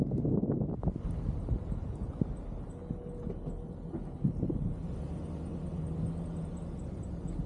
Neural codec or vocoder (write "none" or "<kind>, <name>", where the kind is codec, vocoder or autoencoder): none